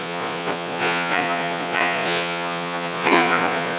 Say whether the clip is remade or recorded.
remade